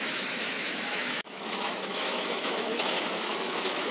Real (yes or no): no